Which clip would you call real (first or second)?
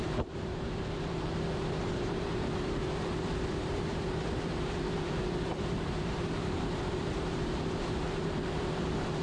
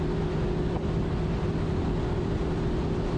second